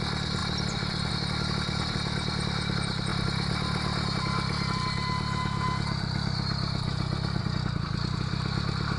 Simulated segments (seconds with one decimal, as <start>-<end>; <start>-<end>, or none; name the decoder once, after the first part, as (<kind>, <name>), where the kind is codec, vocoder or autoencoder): none